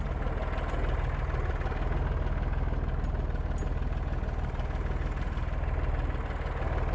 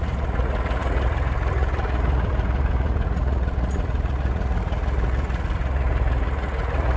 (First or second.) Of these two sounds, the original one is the first